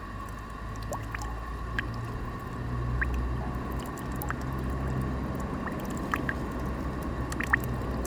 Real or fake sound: real